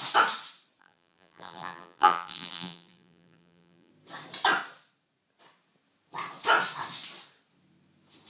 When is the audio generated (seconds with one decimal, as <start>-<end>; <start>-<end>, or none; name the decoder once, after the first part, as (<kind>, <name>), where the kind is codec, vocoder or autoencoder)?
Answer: 0.8-3.9 (vocoder, BigVGAN v2)